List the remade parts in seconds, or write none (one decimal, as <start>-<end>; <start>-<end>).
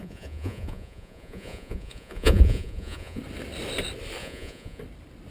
0.0-3.2; 4.2-4.8